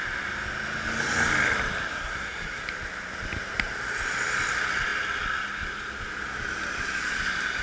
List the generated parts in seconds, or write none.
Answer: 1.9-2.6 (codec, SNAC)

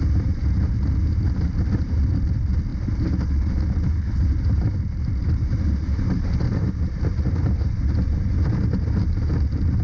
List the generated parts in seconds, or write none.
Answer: 0.0-9.8 (vocoder, BigVGAN v2)